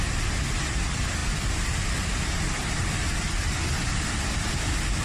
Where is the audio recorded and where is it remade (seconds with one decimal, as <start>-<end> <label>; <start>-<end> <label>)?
0.0-5.0 recorded